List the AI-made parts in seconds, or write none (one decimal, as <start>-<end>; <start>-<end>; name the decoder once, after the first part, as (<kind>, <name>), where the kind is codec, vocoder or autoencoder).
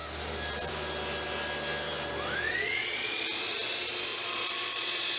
2.5-3.2 (vocoder, Vocos); 4.1-5.2